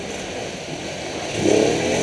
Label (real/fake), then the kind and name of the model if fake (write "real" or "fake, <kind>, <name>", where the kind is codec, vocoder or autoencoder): real